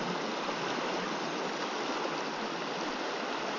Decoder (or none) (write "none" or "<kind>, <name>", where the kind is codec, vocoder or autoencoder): none